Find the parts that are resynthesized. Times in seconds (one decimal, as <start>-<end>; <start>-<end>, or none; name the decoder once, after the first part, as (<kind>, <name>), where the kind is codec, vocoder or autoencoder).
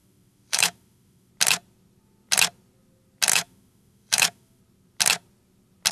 0.0-1.3 (autoencoder, DAC-VAE); 3.3-4.6